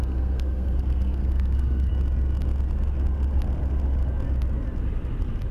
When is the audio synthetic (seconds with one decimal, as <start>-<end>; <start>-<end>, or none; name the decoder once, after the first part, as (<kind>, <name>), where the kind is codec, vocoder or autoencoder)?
0.0-1.9 (codec, SNAC)